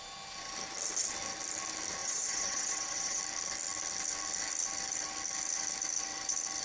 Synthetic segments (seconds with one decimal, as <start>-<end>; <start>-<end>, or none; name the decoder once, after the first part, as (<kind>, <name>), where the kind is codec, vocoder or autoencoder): 2.0-3.2 (vocoder, WaveNeXt)